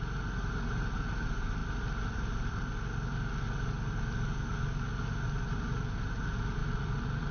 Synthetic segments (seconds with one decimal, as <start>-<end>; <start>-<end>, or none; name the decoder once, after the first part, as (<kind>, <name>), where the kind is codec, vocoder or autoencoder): 1.6-2.6 (vocoder, BigVGAN v2); 6.6-7.3